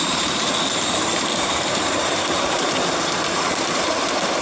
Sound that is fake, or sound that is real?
fake